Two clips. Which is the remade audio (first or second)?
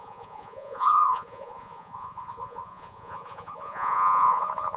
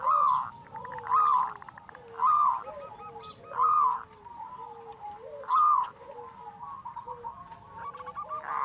first